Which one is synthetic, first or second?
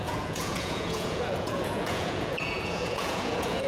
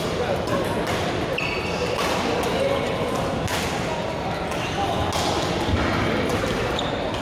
first